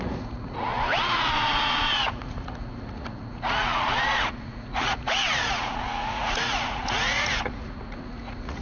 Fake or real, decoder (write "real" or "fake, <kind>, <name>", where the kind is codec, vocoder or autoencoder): fake, vocoder, Vocos